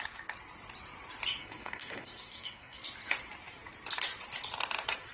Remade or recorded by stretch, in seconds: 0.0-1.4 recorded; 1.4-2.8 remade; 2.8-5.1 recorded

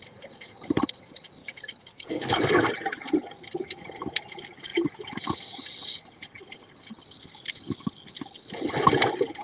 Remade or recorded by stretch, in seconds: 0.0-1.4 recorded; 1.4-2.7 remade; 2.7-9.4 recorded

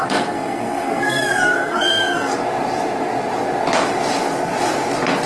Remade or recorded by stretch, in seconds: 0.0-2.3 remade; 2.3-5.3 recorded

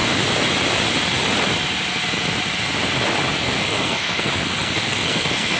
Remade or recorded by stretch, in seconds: 0.0-3.4 recorded; 3.4-5.6 remade

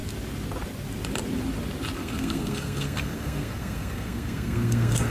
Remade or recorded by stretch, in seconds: 0.0-2.0 recorded; 2.0-5.1 remade

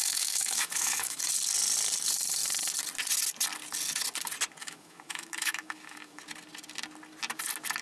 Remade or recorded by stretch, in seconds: 0.0-1.2 remade; 1.2-4.6 recorded; 4.6-6.2 remade; 6.2-7.8 recorded